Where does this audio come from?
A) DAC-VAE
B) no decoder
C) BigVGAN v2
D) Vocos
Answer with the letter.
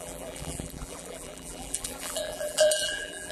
C